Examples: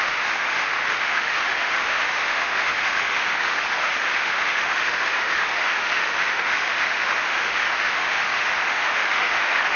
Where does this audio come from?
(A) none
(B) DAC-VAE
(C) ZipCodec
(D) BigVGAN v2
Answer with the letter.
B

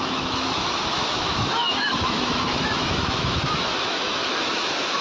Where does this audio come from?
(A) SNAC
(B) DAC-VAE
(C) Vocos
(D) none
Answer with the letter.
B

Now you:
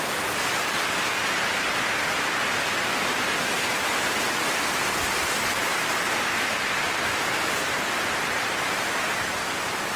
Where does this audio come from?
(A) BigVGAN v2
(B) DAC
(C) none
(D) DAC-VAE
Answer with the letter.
C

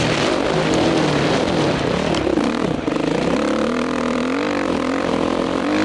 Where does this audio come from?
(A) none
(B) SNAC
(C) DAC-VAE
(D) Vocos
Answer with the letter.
A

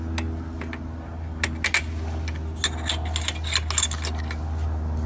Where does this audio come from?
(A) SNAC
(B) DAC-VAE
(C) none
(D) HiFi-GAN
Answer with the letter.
C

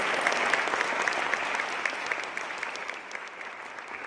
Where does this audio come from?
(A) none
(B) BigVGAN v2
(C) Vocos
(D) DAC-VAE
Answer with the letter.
A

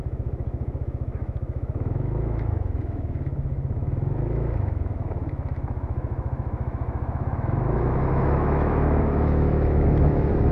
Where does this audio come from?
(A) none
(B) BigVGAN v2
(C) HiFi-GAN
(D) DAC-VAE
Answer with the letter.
D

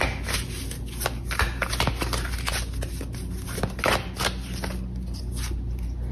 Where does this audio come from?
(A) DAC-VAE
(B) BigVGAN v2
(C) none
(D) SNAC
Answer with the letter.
C